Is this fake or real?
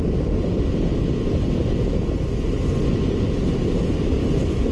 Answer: real